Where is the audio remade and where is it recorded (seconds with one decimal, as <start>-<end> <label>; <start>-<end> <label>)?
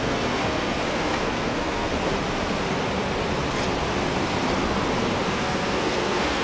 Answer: 0.0-1.9 remade; 1.9-5.3 recorded; 5.3-6.4 remade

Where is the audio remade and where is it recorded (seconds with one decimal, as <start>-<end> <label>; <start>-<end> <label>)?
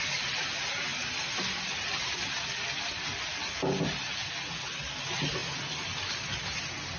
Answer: 0.0-7.0 recorded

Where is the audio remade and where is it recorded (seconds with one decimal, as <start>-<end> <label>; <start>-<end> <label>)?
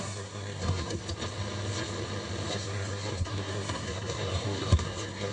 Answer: 0.0-1.0 remade; 1.0-2.5 recorded; 2.5-5.3 remade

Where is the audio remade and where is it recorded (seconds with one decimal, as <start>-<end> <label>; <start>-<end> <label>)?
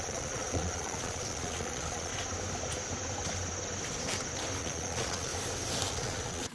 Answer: 0.0-2.1 remade; 2.1-4.6 recorded; 4.6-5.3 remade; 5.3-5.9 recorded; 5.9-6.5 remade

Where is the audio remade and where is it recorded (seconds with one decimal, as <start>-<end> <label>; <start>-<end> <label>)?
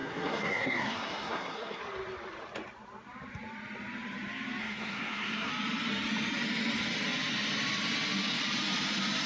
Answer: 0.0-1.8 remade; 1.8-4.6 recorded; 4.6-5.5 remade; 5.5-9.3 recorded